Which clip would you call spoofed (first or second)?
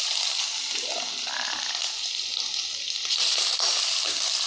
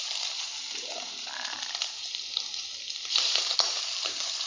second